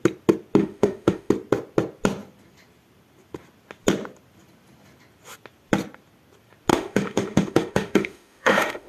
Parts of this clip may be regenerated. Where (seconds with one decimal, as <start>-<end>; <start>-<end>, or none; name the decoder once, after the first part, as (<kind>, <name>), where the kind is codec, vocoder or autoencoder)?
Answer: 0.6-1.3 (autoencoder, DAC-VAE); 6.7-8.9